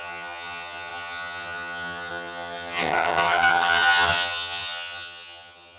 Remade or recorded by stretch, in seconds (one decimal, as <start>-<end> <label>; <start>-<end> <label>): 0.0-5.8 remade